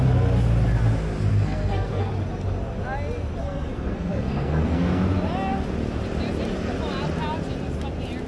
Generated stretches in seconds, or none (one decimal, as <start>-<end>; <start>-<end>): 1.3-2.1; 3.4-5.0